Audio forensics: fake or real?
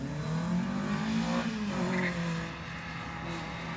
real